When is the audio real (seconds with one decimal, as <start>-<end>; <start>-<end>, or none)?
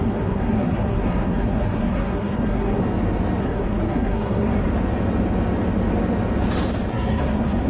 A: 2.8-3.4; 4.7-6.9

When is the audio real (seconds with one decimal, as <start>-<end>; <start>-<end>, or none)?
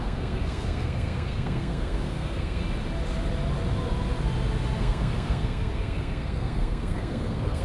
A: 2.6-4.8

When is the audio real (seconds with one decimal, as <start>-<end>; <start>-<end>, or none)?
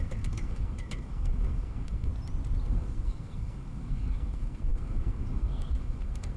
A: 2.1-2.6